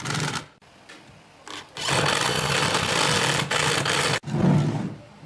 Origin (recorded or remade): recorded